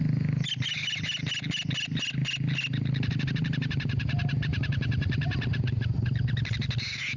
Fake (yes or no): no